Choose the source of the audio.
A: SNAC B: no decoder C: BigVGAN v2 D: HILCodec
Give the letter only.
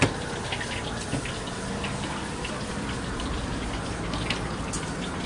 B